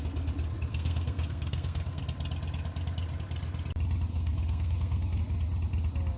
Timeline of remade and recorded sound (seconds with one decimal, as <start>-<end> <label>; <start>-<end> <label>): 0.0-0.7 recorded; 0.7-2.0 remade; 2.0-4.1 recorded; 4.1-5.2 remade; 5.2-6.2 recorded